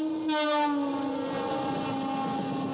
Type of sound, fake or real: real